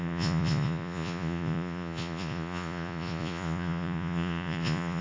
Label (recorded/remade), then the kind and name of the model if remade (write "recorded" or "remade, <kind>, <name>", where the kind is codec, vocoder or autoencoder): remade, vocoder, Vocos